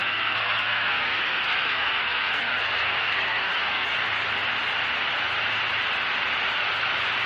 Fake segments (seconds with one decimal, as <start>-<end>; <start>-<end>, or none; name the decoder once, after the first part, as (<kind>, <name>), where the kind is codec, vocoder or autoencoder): 0.0-3.9 (codec, SNAC)